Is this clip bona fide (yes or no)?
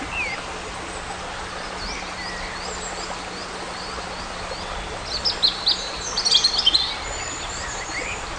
yes